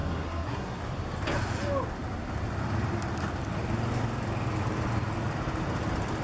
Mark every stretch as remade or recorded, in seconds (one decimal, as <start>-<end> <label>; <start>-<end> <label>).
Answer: 0.0-0.8 remade; 0.8-6.2 recorded